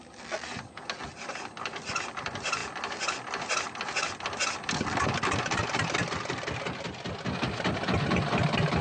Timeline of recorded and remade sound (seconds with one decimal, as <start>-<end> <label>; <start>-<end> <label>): 0.0-1.5 recorded; 1.5-2.6 remade; 2.6-7.4 recorded; 7.4-8.8 remade